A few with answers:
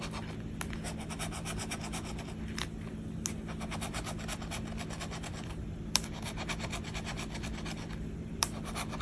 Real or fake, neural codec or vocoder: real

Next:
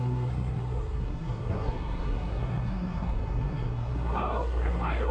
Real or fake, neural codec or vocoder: fake, codec, SNAC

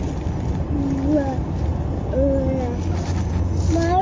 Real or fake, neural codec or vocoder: real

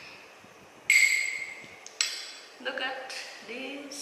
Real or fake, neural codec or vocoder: real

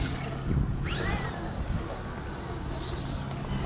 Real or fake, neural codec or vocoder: real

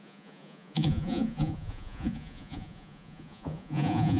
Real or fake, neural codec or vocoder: fake, vocoder, Vocos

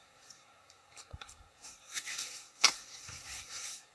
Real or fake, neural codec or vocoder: fake, codec, SNAC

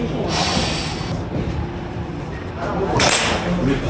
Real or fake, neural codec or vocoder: real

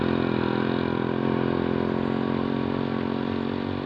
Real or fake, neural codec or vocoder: real